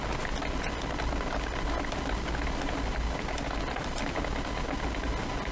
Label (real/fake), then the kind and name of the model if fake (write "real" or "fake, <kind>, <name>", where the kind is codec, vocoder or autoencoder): real